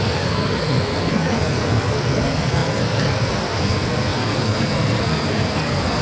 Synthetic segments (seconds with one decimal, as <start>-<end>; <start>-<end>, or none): 0.0-6.0